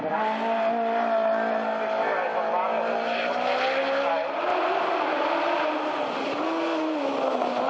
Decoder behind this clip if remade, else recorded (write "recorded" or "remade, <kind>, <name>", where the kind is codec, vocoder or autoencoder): recorded